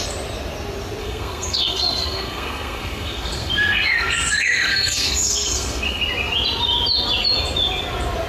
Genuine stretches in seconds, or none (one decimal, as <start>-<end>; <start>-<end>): 0.0-1.0; 6.0-8.3